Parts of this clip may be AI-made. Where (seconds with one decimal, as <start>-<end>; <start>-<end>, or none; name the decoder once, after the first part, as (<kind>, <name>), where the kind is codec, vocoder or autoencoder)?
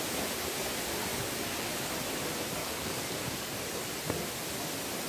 1.1-1.9 (codec, DAC); 2.6-3.5